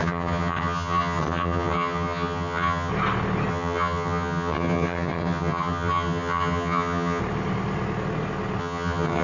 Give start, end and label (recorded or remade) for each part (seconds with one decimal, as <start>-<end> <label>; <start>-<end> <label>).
0.0-2.9 remade; 2.9-3.5 recorded; 3.5-7.2 remade; 7.2-8.6 recorded; 8.6-9.2 remade